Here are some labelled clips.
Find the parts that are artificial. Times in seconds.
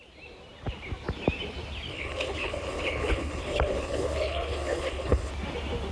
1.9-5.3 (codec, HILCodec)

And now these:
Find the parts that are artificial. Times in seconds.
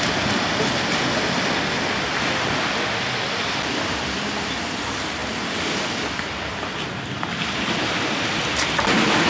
none